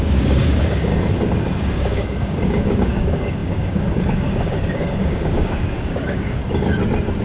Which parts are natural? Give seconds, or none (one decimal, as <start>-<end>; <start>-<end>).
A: 0.9-1.7; 6.4-7.2